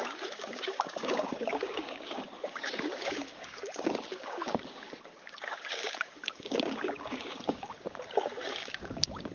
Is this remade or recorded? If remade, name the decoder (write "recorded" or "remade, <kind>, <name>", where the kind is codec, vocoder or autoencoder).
remade, codec, DAC